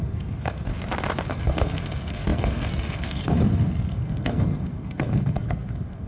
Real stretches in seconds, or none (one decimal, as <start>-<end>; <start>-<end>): 0.7-1.3